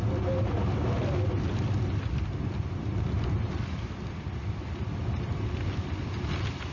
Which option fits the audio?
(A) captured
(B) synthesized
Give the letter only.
A